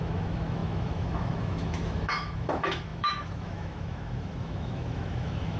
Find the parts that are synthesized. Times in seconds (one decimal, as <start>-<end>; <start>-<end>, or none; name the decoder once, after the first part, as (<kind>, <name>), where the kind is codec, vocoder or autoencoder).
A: 0.0-5.6 (autoencoder, DAC-VAE)

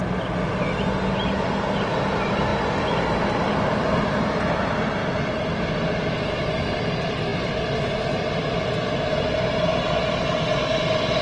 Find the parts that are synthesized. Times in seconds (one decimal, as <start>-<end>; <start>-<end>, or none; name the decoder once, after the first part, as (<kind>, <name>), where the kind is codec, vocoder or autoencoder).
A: none